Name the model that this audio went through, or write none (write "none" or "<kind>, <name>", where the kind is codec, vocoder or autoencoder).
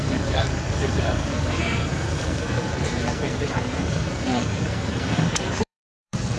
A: codec, SNAC